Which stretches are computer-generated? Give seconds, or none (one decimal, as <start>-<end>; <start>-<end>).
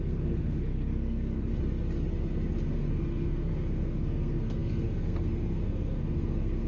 0.0-1.5; 2.7-6.7